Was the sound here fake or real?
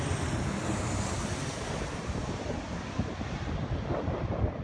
real